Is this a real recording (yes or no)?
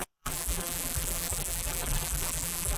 no